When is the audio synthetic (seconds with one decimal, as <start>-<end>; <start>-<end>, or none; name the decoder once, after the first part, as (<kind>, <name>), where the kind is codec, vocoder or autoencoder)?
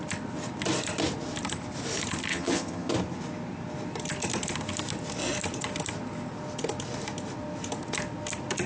2.3-2.9 (vocoder, HiFi-GAN)